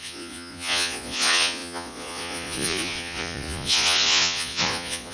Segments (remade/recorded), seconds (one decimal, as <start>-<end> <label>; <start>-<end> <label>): 0.0-5.1 remade